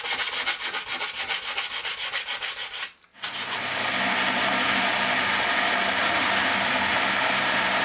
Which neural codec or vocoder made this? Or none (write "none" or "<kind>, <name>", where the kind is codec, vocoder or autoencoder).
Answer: none